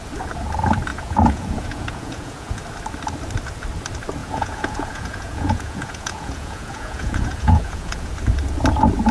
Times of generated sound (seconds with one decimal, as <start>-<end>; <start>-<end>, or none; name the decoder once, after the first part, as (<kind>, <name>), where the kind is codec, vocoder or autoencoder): 0.9-2.6 (vocoder, Vocos); 4.2-8.1